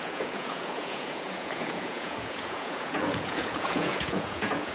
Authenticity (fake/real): fake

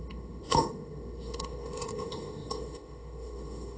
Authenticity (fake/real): fake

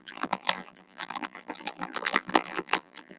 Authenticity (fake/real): fake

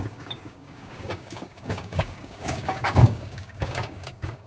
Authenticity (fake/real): fake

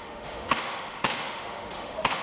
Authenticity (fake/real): fake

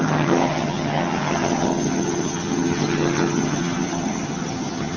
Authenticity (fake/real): fake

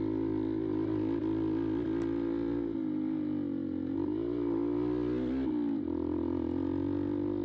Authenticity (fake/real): real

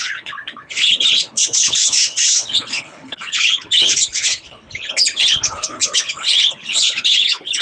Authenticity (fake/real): fake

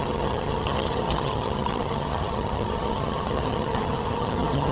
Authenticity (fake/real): fake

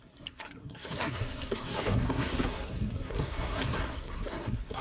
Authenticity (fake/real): fake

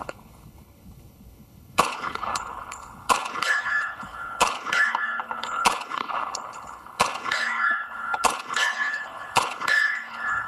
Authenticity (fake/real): fake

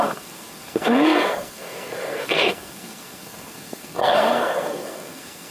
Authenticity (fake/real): fake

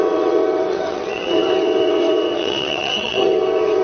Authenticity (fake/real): fake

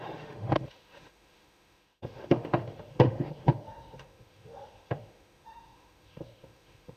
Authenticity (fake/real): fake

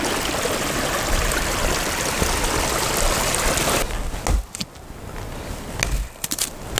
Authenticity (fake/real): real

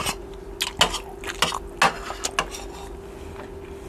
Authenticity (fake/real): real